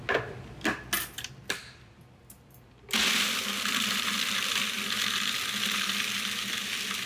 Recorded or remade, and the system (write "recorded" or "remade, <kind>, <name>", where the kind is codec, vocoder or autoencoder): recorded